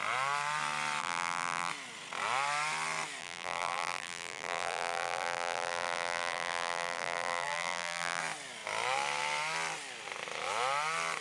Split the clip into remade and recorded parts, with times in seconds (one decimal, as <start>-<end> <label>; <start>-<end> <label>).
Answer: 0.0-1.0 recorded; 1.0-1.7 remade; 1.7-3.2 recorded; 3.2-8.2 remade; 8.2-11.2 recorded